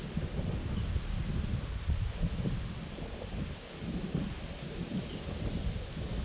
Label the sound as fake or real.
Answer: real